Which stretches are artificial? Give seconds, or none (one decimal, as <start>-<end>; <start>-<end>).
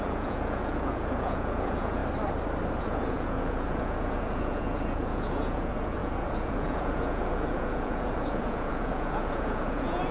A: 0.0-2.0; 2.8-10.1